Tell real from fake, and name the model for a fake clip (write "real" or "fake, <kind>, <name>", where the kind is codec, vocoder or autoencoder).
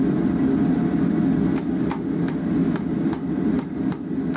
real